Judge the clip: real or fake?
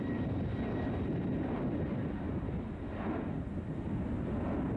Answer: real